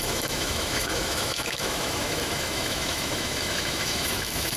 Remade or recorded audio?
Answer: remade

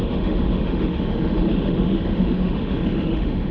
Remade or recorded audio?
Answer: remade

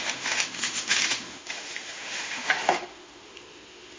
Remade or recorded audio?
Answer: remade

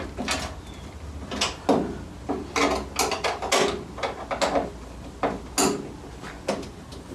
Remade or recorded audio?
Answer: recorded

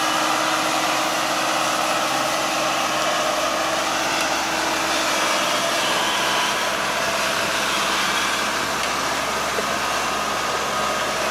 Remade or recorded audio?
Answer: recorded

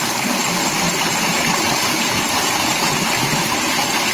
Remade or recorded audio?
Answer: recorded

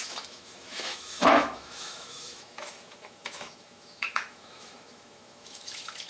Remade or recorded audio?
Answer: remade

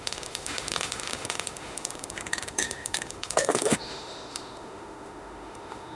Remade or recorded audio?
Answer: remade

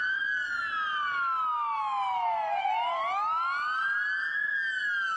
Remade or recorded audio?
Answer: recorded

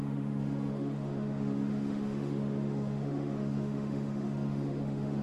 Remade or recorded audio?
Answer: remade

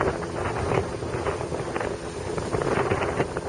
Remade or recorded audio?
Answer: recorded